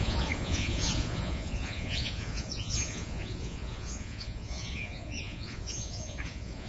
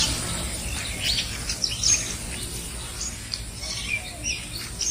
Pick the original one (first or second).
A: second